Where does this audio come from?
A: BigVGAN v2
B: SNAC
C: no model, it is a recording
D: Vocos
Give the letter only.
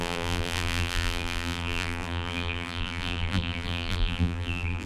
A